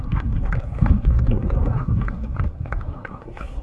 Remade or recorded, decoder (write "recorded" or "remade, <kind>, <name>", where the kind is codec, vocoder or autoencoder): remade, codec, SNAC